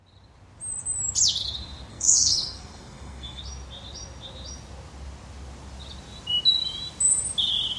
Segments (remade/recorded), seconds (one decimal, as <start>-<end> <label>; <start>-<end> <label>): 0.0-1.9 recorded; 1.9-3.4 remade; 3.4-7.8 recorded